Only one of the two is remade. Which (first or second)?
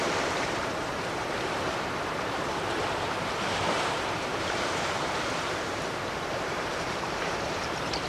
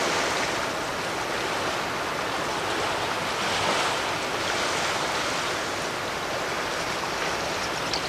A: first